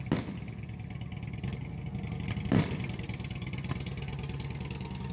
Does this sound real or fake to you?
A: real